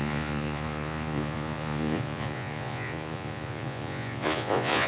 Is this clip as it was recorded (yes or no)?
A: no